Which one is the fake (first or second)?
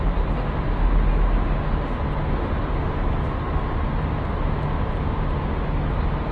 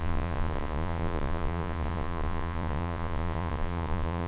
second